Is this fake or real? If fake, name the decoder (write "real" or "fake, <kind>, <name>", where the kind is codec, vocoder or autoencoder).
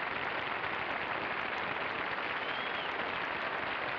real